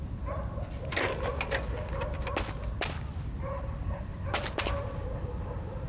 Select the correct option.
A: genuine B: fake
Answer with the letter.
A